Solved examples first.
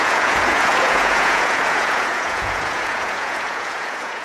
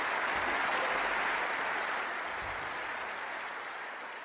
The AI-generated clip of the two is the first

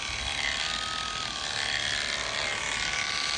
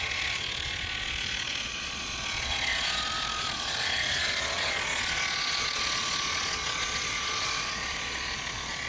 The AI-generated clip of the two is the second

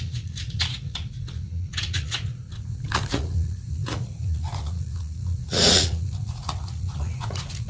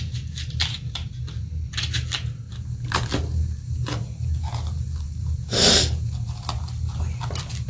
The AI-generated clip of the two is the first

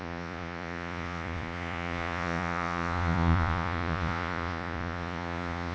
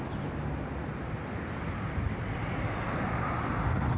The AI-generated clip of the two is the first